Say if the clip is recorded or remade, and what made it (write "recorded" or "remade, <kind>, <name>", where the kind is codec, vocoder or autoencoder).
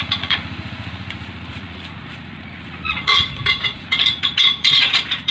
remade, vocoder, Vocos